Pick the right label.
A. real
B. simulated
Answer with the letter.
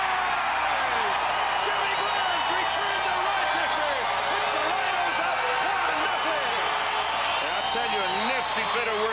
A